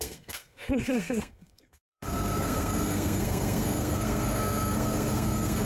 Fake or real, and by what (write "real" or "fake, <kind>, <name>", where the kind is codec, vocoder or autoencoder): fake, codec, SNAC